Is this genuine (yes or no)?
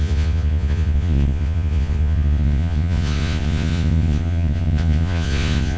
no